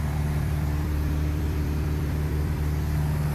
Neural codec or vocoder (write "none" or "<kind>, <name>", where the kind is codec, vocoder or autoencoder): vocoder, BigVGAN v2